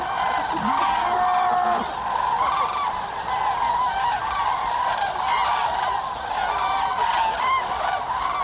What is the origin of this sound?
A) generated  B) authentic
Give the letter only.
B